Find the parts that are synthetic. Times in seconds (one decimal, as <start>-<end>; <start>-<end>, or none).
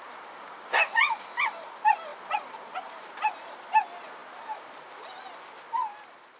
none